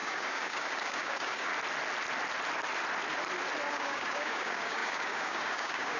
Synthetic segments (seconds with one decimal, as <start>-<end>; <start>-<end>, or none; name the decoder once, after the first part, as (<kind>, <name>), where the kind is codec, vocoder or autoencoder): 0.0-1.5 (codec, DAC); 3.7-6.0

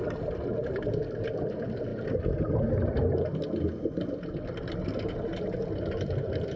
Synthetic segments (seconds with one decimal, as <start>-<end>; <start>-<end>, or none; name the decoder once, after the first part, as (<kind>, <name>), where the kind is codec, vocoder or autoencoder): none

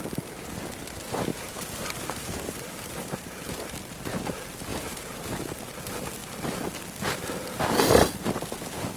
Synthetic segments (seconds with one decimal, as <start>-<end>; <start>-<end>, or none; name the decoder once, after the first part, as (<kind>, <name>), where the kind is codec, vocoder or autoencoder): 1.3-3.8 (vocoder, BigVGAN v2)

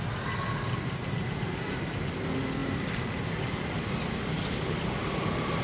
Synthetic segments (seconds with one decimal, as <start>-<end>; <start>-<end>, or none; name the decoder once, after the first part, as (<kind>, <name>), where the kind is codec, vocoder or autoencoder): none

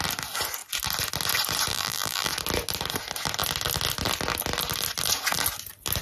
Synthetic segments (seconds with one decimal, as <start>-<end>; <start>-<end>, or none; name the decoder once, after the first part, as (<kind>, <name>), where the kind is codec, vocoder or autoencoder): 1.7-2.3 (vocoder, BigVGAN v2)

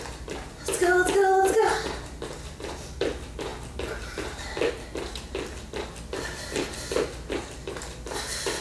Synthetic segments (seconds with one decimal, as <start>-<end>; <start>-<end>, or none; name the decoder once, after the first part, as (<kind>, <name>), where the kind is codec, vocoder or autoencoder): none

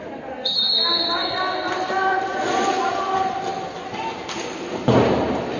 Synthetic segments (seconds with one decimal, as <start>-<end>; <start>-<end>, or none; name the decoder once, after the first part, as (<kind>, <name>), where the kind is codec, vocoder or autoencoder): none

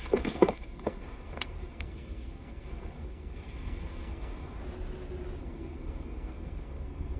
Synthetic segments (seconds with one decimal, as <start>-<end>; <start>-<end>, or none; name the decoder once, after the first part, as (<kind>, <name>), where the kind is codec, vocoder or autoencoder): 0.0-4.6 (codec, SNAC); 5.4-7.2